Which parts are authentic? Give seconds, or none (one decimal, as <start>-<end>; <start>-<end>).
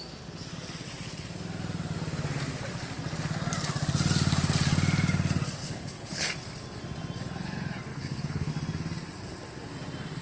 0.0-5.6; 6.3-7.9; 8.5-10.2